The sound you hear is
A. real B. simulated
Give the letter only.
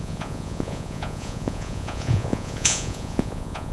B